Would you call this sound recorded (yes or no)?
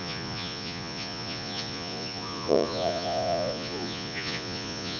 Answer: no